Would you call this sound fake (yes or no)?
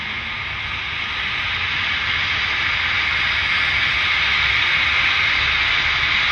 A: no